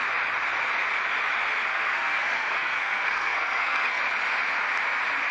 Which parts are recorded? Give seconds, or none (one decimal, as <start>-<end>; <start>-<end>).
0.0-1.7; 4.0-5.3